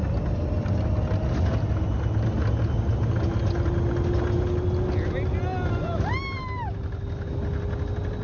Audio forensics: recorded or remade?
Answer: recorded